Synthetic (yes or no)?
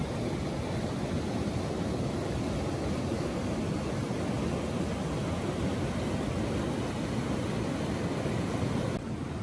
no